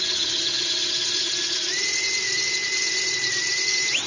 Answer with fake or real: real